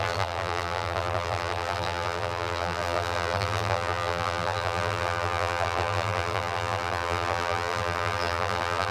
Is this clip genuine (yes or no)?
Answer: no